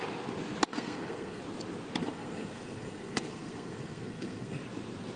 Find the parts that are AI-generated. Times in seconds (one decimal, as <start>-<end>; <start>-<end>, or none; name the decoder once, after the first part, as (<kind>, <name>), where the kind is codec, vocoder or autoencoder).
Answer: 0.7-1.4 (codec, SNAC); 2.0-4.6